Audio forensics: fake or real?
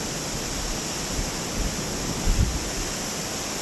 real